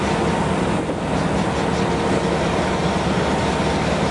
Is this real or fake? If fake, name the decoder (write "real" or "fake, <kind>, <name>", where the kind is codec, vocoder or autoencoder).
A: real